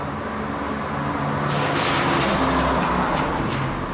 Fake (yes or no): no